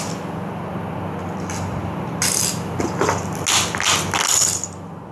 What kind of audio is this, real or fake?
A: real